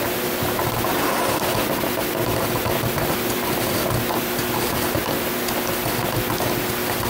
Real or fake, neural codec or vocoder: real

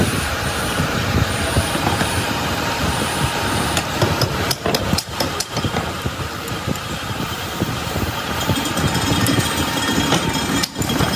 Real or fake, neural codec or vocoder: fake, vocoder, BigVGAN v2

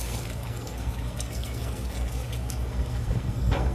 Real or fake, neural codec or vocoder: fake, codec, SNAC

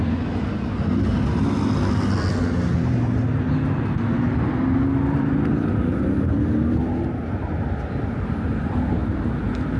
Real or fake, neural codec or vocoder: real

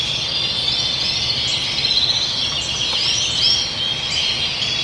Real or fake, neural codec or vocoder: real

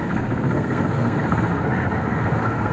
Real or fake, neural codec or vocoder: fake, codec, SNAC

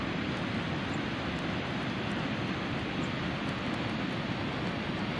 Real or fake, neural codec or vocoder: real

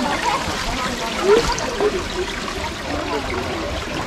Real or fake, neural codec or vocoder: fake, vocoder, BigVGAN v2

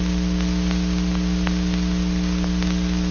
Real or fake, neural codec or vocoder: real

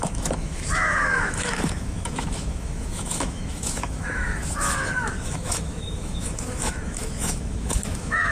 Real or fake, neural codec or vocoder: fake, autoencoder, DAC-VAE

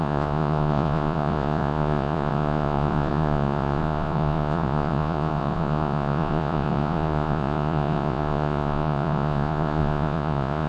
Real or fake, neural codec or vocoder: fake, vocoder, Vocos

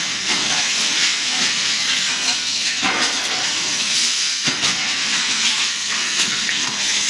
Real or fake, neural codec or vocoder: fake, codec, SNAC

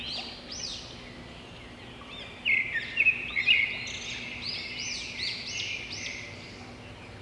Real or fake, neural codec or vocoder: real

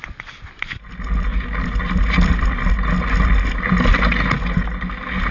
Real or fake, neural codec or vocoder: real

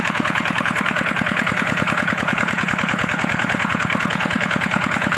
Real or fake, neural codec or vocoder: fake, codec, HILCodec